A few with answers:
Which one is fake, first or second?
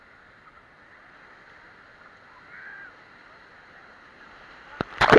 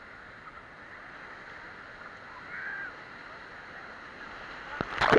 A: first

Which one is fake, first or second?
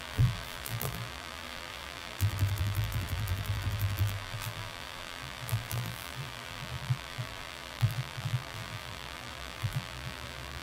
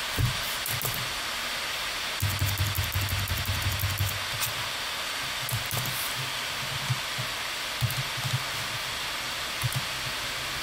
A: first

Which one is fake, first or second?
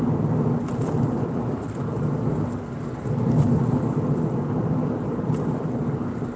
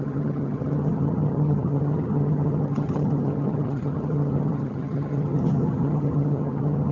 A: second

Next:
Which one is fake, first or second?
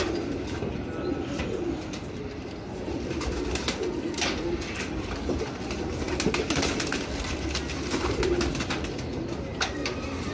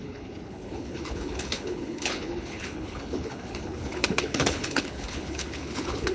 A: second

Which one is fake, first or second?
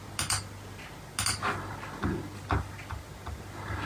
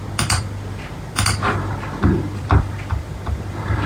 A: second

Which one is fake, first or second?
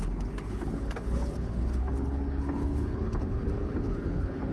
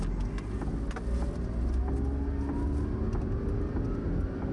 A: first